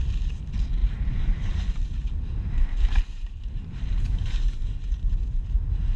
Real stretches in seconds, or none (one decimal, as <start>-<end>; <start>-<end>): 0.0-0.8; 4.4-6.0